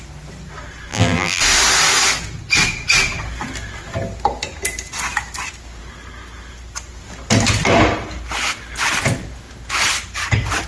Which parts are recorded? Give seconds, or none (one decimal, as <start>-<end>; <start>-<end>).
0.0-0.9; 1.4-10.7

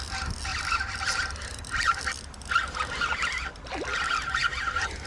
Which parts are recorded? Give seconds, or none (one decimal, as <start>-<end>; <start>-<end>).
0.0-0.5; 2.0-5.1

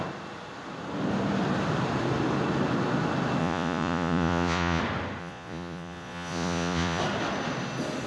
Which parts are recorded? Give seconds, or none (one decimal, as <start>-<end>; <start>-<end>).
0.0-3.4; 4.8-5.2; 7.0-8.1

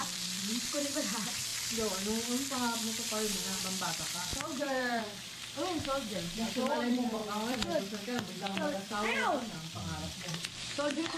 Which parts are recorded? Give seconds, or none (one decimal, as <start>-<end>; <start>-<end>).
1.5-3.6

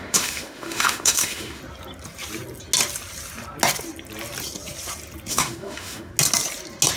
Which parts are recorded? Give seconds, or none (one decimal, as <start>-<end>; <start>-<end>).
1.6-5.3; 6.1-7.0

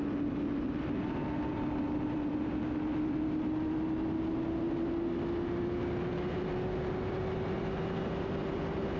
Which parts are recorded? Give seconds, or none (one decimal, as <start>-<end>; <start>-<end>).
0.0-1.5; 2.5-9.0